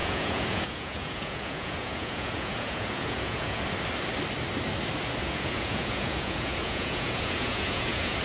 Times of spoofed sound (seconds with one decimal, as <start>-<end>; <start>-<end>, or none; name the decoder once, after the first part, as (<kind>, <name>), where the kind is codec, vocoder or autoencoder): 0.0-3.6 (vocoder, Vocos); 5.2-8.2